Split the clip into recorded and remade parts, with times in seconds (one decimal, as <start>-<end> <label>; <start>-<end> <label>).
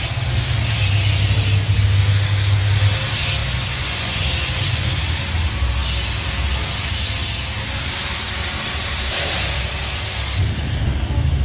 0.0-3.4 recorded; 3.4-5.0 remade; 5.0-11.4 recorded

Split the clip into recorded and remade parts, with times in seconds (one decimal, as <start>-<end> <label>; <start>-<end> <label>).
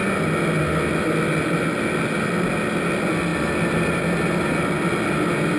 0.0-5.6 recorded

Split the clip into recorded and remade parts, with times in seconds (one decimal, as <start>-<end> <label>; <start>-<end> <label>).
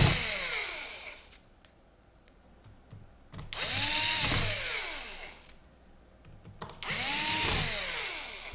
0.0-0.6 recorded; 0.6-2.4 remade; 2.4-8.5 recorded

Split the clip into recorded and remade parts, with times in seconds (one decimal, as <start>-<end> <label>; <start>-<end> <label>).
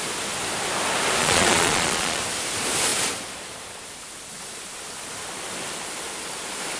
0.0-1.2 recorded; 1.2-2.2 remade; 2.2-6.8 recorded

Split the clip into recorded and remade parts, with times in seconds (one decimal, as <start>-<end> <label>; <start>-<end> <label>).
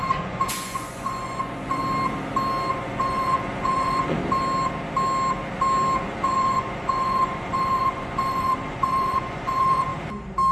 0.0-1.8 remade; 1.8-2.7 recorded; 2.7-4.2 remade; 4.2-6.0 recorded; 6.0-9.9 remade; 9.9-10.5 recorded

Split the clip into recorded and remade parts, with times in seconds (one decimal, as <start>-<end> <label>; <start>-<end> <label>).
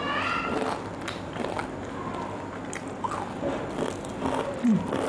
0.0-5.1 recorded